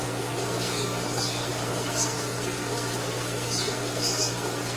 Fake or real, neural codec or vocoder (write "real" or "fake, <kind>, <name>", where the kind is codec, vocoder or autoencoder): fake, codec, SNAC